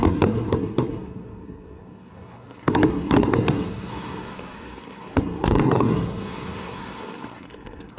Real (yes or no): no